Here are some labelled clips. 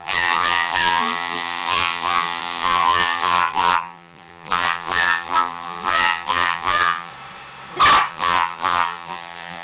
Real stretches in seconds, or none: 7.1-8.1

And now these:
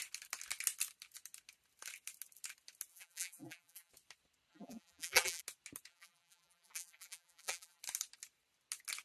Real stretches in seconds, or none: 0.0-2.9; 3.9-4.5; 5.4-5.9; 7.8-9.0